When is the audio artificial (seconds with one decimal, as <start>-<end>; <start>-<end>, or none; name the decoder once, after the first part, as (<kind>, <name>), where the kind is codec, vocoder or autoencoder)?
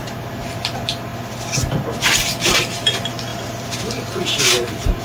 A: 1.1-1.8 (vocoder, BigVGAN v2); 3.3-4.2